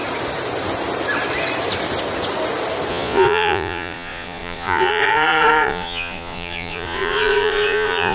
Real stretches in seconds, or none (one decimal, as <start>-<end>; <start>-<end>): 0.0-2.9